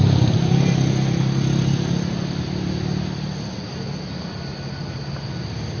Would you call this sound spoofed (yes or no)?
no